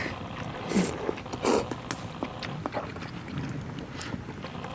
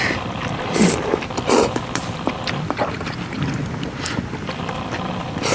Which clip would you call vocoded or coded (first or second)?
second